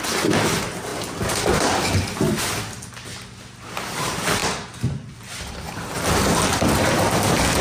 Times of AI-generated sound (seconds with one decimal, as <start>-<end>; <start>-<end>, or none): 4.4-6.4